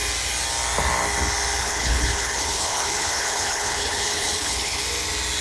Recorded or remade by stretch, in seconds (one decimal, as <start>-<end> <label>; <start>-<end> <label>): 0.0-1.6 recorded; 1.6-4.8 remade; 4.8-5.4 recorded